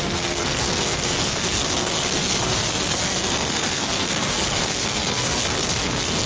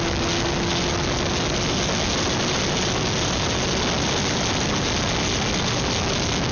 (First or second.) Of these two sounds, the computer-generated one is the first